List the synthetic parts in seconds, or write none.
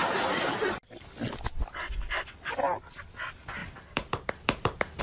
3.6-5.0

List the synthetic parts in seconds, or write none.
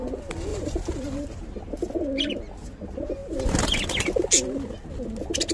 0.5-1.5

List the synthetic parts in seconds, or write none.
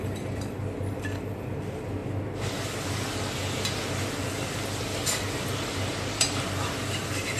0.0-7.4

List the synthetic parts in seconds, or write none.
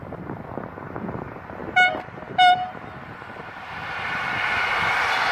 1.6-4.2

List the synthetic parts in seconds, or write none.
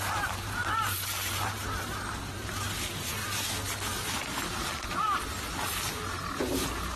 0.0-3.2; 4.8-7.0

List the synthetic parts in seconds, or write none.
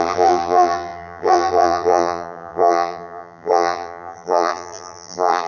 0.0-5.5